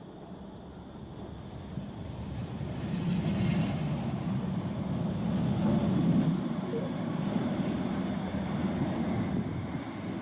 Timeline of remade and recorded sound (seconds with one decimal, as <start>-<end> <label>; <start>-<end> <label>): 0.0-2.0 recorded; 2.0-3.0 remade; 3.0-5.8 recorded; 5.8-8.7 remade; 8.7-10.2 recorded